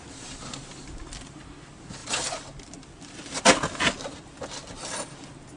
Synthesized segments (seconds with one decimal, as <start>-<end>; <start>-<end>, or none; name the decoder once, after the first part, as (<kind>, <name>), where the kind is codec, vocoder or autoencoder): 2.0-3.4 (vocoder, BigVGAN v2)

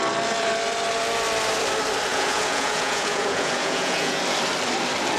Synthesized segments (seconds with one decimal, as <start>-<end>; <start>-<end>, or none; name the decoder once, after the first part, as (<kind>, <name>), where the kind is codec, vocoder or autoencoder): 2.1-4.2 (vocoder, Vocos)

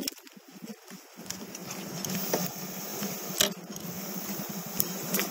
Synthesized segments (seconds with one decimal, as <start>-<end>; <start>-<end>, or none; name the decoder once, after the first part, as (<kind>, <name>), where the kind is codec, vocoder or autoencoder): none